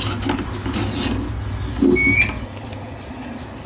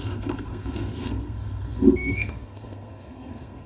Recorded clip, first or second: first